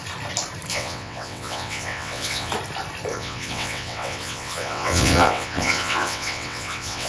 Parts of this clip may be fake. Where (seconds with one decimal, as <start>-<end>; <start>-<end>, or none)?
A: 0.7-2.5; 3.1-7.1